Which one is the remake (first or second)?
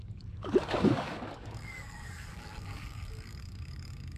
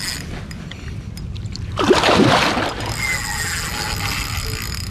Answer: first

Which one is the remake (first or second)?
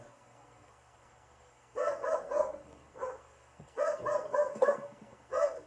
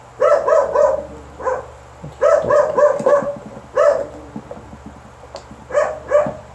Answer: first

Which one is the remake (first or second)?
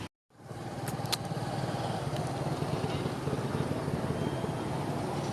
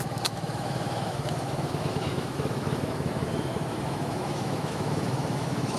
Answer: second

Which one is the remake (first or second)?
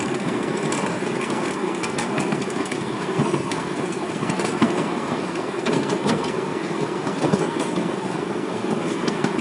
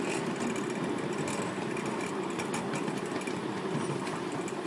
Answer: first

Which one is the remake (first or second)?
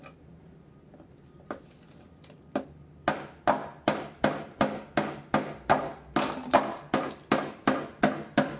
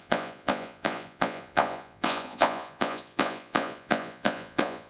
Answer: second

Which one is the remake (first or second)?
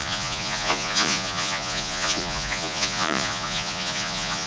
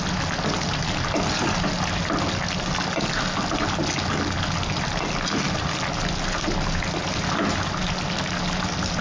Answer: first